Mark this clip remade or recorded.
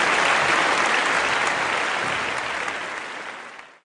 recorded